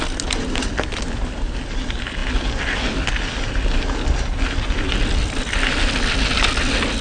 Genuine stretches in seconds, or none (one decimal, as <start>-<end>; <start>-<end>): 0.0-7.0